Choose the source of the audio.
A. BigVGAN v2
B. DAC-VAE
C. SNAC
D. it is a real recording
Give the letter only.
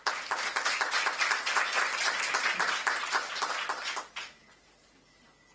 D